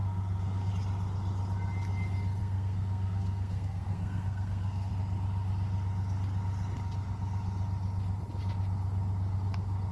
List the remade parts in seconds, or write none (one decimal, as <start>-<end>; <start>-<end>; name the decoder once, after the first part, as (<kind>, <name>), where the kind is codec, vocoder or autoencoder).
0.0-0.7 (codec, SNAC); 2.4-4.9